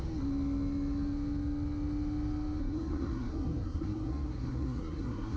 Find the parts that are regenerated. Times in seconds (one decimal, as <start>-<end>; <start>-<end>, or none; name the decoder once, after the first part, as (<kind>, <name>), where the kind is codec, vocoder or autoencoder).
2.6-5.4 (codec, SNAC)